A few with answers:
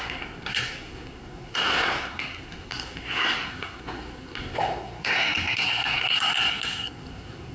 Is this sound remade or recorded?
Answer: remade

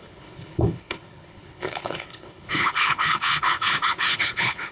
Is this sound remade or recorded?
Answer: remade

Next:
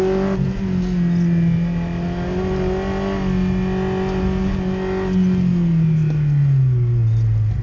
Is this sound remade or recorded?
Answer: recorded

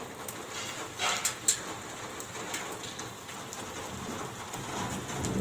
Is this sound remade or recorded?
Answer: recorded